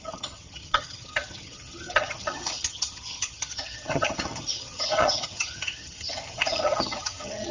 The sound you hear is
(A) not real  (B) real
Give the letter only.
A